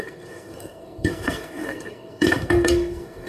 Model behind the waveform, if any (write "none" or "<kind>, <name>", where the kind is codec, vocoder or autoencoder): codec, SNAC